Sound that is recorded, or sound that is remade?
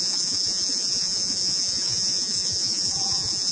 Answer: remade